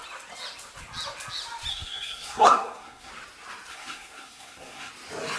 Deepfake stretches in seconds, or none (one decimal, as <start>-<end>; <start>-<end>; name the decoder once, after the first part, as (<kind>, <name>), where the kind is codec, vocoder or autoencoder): 1.7-3.1 (codec, SNAC); 3.7-4.9